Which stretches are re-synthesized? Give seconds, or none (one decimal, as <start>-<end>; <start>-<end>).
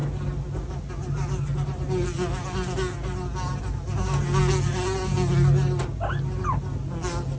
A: none